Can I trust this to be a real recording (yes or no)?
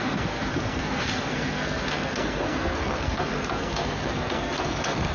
no